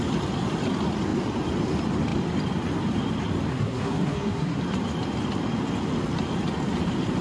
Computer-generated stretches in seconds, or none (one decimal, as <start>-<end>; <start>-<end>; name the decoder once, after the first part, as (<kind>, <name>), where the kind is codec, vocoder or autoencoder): 3.5-4.6 (codec, SNAC)